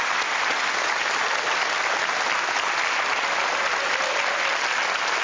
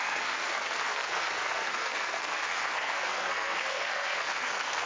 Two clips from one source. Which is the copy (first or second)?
second